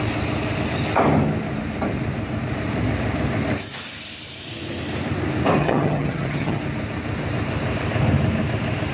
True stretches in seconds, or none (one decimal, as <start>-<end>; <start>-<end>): 0.0-5.6; 6.6-8.9